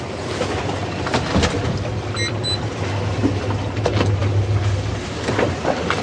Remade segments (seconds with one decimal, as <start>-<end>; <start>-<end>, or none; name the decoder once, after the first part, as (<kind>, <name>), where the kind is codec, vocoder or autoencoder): none